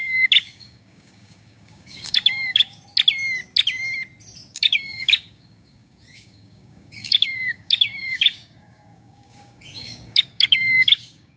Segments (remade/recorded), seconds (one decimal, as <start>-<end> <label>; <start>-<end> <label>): 0.0-2.8 remade; 2.8-4.5 recorded; 4.5-11.4 remade